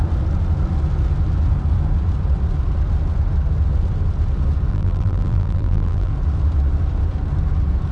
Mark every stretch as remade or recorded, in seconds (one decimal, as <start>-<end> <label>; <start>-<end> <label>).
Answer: 0.0-4.7 recorded; 4.7-6.1 remade; 6.1-7.9 recorded